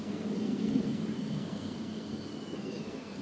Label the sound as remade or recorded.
remade